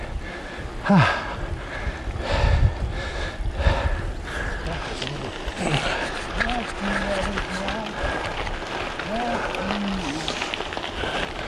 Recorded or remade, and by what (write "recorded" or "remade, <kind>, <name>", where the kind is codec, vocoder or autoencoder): recorded